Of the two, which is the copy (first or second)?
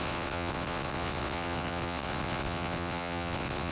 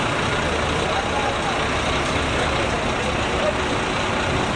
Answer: first